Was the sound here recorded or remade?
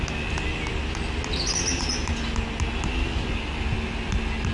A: recorded